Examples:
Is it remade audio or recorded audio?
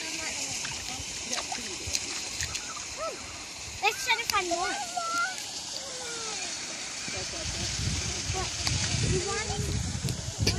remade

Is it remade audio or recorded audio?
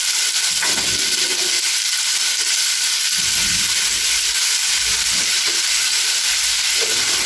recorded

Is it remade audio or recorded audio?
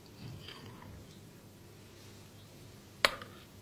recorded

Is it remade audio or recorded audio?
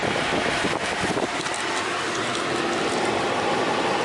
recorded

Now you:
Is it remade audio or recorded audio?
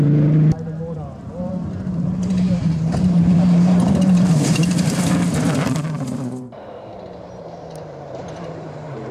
remade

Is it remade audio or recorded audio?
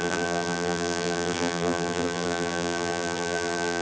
remade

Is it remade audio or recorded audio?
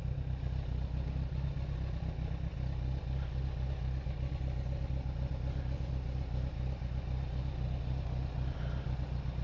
recorded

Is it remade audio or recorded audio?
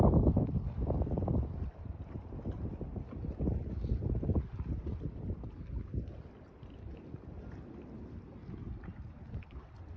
remade